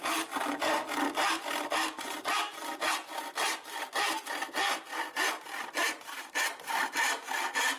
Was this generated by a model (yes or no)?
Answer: no